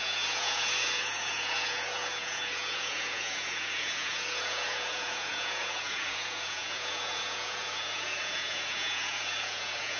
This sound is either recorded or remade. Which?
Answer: remade